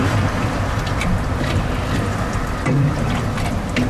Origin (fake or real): fake